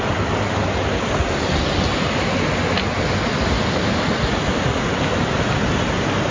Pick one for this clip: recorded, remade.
recorded